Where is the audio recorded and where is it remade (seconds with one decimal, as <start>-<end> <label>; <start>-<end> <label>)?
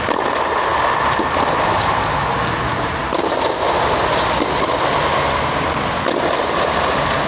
0.0-7.3 recorded